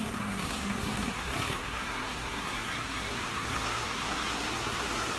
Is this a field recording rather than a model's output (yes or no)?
no